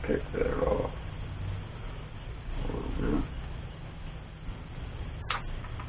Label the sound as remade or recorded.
recorded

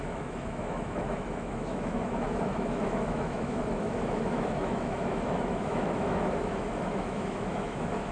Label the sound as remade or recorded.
remade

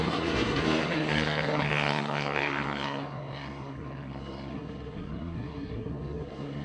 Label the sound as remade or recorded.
remade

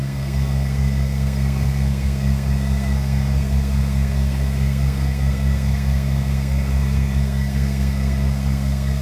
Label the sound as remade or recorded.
remade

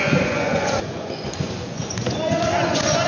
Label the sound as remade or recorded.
remade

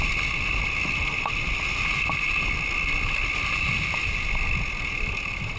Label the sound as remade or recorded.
recorded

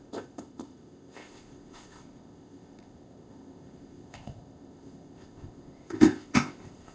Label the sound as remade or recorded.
remade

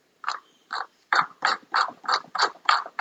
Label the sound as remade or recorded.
remade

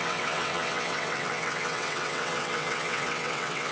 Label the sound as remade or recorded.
remade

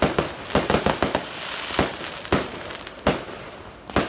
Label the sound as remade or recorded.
recorded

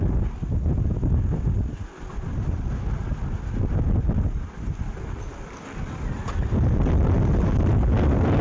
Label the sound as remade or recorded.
recorded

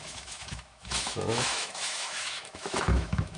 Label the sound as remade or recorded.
remade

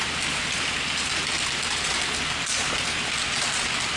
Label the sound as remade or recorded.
recorded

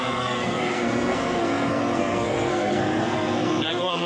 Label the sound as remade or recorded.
remade